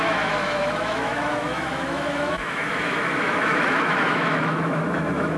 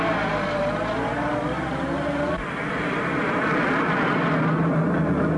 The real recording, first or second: second